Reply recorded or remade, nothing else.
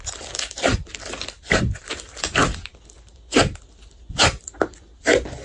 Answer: remade